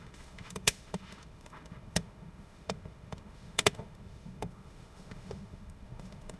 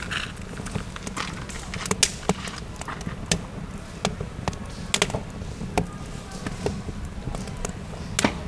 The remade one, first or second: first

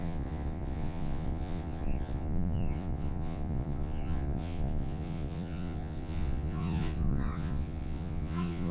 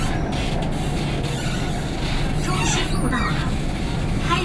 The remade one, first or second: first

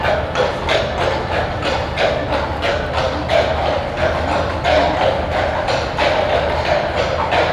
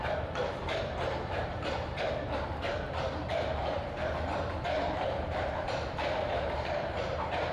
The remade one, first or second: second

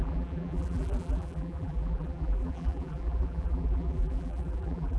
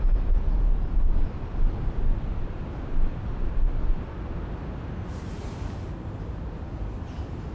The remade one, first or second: first